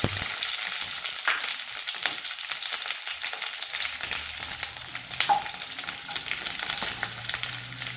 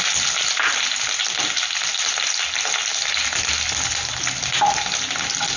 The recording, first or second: second